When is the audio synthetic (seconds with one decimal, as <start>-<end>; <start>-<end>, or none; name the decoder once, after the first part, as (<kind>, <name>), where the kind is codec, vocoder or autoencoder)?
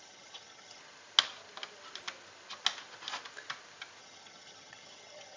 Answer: 0.0-0.8 (vocoder, HiFi-GAN); 4.0-5.4